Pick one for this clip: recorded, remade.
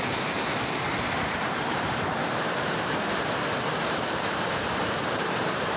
remade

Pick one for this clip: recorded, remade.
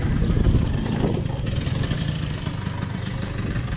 recorded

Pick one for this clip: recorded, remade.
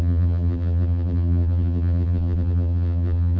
remade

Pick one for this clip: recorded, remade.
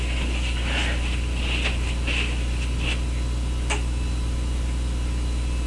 recorded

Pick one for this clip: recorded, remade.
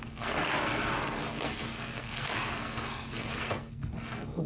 remade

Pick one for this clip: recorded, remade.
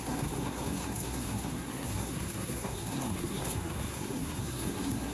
remade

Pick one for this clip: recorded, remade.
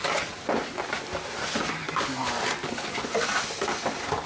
recorded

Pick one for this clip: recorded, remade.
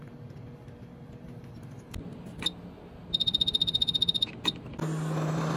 recorded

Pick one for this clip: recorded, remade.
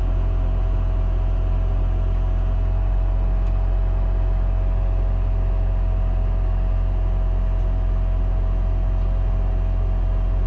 recorded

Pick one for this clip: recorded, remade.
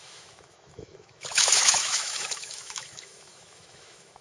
remade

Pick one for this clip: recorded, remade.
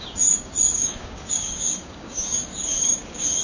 remade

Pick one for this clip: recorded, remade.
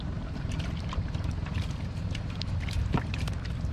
remade